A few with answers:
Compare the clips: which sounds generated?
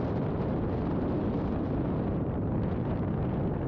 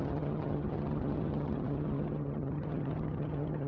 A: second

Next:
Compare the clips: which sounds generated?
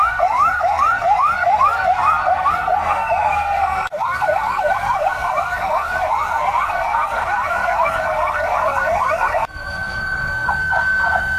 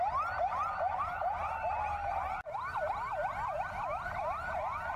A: first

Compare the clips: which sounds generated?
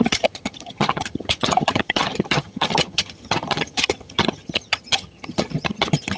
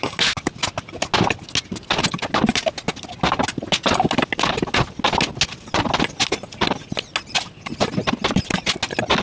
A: first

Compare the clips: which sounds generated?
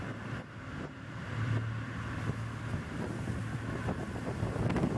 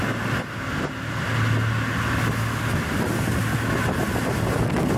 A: first